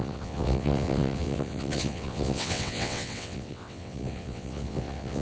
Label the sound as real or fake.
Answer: fake